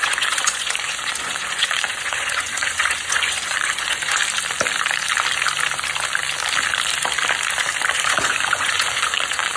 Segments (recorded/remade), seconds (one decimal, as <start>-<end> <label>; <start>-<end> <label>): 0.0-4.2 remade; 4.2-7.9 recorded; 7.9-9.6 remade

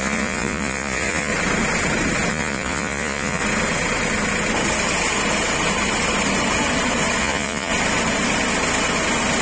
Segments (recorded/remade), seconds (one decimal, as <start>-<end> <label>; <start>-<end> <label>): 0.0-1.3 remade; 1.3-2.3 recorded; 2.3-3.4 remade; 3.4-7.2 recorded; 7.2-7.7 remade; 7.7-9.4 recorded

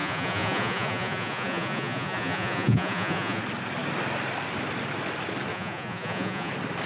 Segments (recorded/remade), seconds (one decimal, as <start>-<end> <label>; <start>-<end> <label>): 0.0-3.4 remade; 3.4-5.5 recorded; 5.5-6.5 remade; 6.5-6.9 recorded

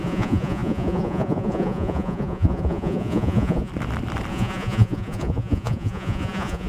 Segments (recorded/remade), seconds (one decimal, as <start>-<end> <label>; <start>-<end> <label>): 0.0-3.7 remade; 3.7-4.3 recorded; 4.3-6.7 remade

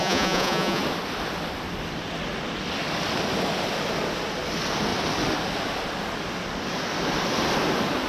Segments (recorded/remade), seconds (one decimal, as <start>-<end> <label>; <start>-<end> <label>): 0.0-0.8 remade; 0.8-8.1 recorded